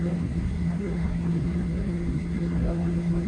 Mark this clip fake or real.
fake